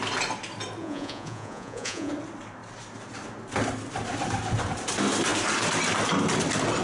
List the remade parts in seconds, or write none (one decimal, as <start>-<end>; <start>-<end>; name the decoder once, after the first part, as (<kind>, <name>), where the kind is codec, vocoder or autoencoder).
0.8-2.1 (vocoder, Vocos)